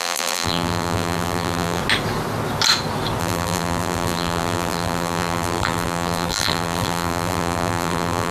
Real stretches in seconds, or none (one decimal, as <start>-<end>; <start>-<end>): 1.8-3.2